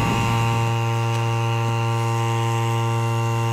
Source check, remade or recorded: remade